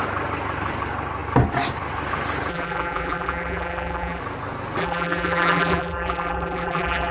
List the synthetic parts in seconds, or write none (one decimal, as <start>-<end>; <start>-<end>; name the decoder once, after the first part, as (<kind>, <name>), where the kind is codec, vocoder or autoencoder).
2.5-4.2 (vocoder, BigVGAN v2); 4.8-7.1